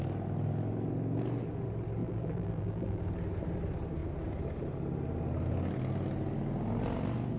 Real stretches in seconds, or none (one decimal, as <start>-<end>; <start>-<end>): 0.0-2.0; 3.0-7.4